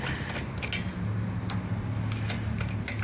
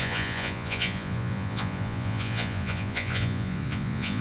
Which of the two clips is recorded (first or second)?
first